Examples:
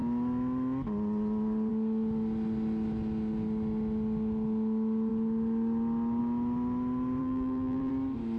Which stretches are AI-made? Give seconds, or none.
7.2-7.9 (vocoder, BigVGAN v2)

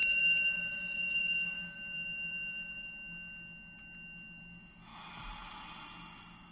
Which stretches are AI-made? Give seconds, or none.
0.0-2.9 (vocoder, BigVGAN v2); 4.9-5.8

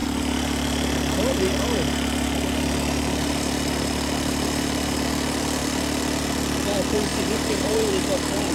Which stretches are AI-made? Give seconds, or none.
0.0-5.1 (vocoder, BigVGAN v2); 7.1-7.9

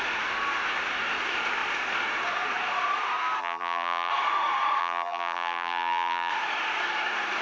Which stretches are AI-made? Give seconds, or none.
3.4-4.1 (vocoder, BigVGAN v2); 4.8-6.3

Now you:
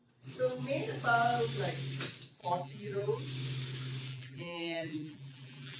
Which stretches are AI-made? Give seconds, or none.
2.4-3.2 (vocoder, BigVGAN v2); 4.1-5.8

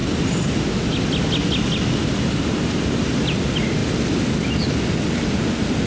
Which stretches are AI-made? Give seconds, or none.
none

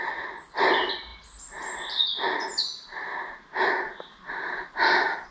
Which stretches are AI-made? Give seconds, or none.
none